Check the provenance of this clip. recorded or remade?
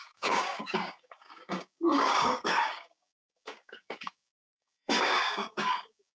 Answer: remade